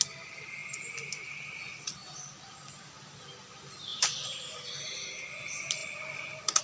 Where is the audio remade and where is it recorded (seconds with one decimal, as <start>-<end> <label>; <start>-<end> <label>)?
0.0-2.0 recorded; 2.0-3.1 remade; 3.1-3.9 recorded; 3.9-4.7 remade; 4.7-5.8 recorded; 5.8-6.6 remade